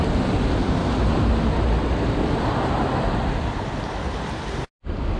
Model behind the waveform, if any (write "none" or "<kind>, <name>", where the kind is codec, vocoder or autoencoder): none